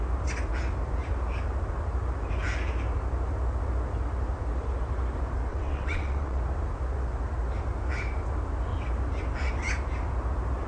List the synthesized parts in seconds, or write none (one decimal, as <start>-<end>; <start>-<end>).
5.5-6.4